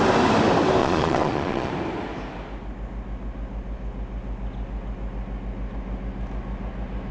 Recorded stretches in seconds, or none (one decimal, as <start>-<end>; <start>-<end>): 0.0-0.8; 1.7-7.1